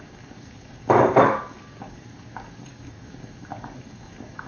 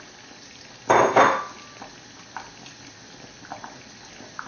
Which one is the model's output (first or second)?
first